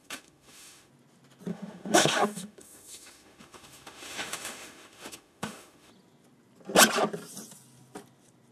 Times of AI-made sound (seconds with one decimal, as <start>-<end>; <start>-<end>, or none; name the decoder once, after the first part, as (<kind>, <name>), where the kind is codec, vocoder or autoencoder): 0.0-0.9 (autoencoder, DAC-VAE); 1.5-5.9